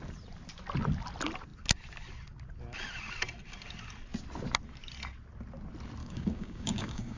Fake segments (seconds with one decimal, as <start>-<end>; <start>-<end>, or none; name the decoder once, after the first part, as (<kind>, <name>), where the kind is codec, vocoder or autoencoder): 6.0-7.2 (codec, DAC)